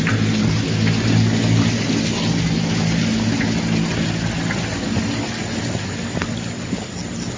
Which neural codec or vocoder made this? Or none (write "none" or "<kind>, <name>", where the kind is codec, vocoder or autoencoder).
none